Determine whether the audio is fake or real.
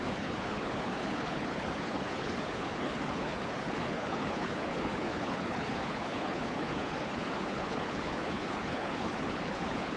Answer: fake